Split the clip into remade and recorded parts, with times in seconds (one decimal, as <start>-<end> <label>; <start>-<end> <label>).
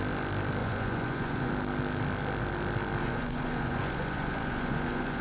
0.0-0.6 recorded; 0.6-1.5 remade; 1.5-3.0 recorded; 3.0-5.2 remade